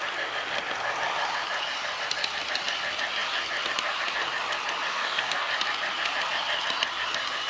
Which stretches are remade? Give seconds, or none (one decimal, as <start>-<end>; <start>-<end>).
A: 4.9-5.5